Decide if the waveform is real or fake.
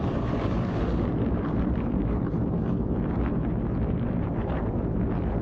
fake